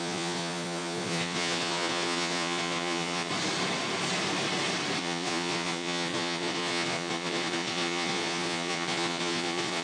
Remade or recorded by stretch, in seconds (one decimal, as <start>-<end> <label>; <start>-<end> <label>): 0.0-3.3 remade; 3.3-5.0 recorded; 5.0-9.8 remade